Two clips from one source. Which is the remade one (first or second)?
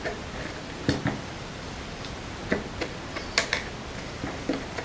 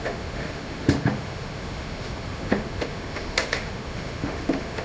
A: second